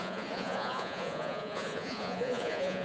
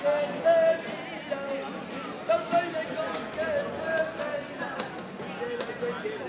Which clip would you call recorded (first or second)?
second